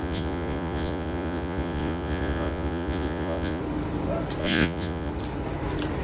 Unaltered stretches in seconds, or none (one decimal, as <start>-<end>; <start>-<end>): 3.6-4.4; 5.1-6.0